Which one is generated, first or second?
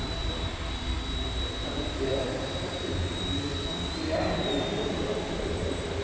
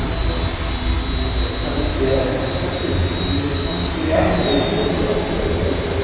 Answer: first